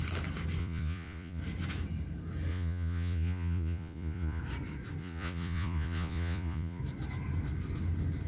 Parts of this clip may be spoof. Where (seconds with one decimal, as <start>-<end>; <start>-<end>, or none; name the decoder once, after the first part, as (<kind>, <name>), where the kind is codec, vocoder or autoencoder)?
0.6-1.4 (vocoder, Vocos); 2.5-4.4; 5.0-6.8